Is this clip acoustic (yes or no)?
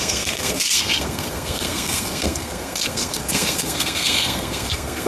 no